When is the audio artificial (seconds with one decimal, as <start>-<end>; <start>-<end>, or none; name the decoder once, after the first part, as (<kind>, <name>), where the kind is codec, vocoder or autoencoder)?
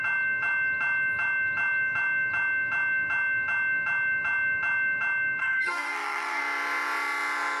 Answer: 5.4-6.4 (codec, SNAC)